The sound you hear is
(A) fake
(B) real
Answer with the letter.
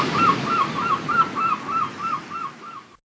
B